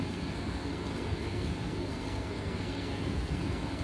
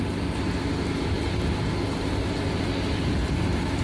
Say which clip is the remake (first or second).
first